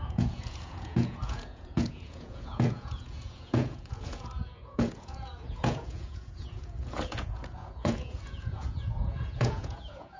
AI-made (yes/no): yes